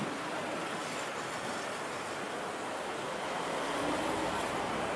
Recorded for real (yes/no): yes